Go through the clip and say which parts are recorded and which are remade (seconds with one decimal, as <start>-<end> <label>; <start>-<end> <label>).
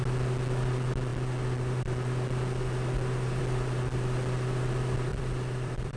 0.0-5.1 recorded; 5.1-6.0 remade